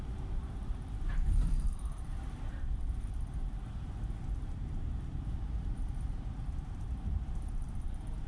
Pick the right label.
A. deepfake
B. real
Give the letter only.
A